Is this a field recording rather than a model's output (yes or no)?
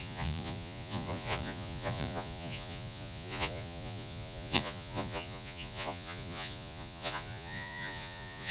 no